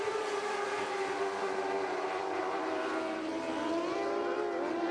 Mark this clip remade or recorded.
remade